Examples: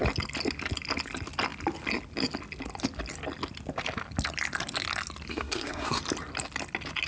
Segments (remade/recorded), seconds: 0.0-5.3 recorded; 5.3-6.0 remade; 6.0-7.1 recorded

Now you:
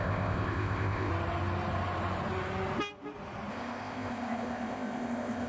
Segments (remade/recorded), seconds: 0.0-1.1 remade; 1.1-3.5 recorded; 3.5-5.5 remade

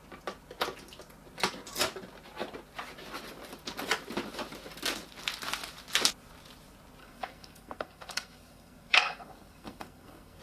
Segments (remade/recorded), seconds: 0.0-7.0 recorded; 7.0-10.4 remade

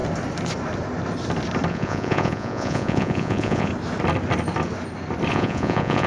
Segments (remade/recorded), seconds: 0.0-1.7 recorded; 1.7-3.7 remade; 3.7-5.3 recorded; 5.3-6.1 remade